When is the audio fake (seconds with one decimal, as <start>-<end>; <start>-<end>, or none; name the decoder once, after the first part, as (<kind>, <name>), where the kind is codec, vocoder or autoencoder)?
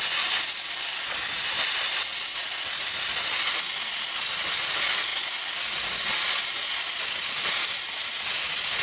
none